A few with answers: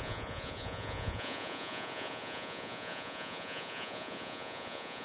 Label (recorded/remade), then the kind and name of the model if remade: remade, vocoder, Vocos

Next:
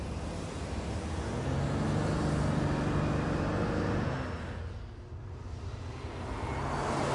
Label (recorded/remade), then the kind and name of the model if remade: recorded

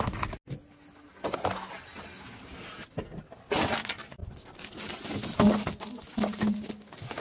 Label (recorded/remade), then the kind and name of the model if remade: recorded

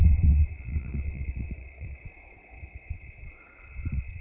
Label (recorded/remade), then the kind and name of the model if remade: remade, vocoder, WaveNeXt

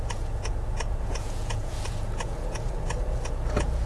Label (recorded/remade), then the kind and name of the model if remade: remade, vocoder, Vocos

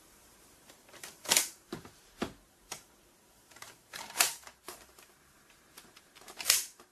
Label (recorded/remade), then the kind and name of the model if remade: remade, vocoder, BigVGAN v2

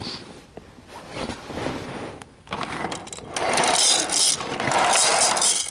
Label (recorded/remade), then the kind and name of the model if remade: recorded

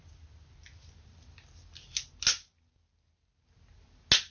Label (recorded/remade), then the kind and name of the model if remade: recorded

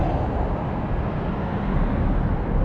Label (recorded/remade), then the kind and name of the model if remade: recorded